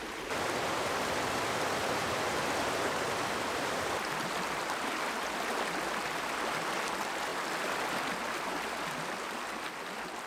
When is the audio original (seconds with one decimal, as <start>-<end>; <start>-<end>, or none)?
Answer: 0.0-10.3